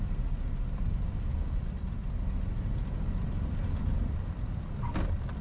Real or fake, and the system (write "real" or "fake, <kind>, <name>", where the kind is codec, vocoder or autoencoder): real